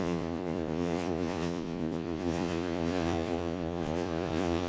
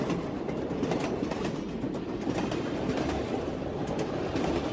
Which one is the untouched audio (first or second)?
second